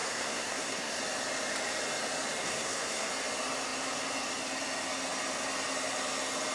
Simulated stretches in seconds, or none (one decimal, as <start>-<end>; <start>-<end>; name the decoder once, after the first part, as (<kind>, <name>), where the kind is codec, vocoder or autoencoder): 0.0-1.0 (codec, SNAC); 2.4-3.1